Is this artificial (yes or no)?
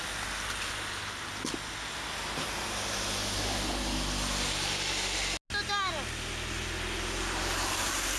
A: no